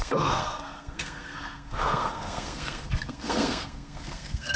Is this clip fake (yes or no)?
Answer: yes